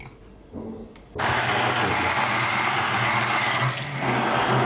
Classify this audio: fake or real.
real